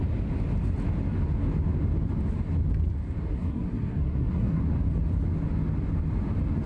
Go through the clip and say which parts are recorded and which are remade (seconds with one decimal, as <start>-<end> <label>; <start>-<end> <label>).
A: 0.0-3.3 recorded; 3.3-4.6 remade; 4.6-6.7 recorded